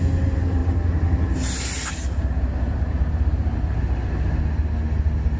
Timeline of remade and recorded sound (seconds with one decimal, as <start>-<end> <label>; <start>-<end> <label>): 0.0-5.4 recorded